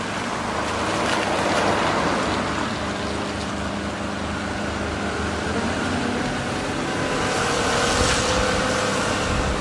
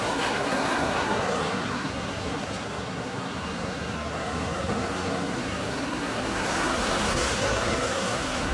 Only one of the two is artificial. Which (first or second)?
second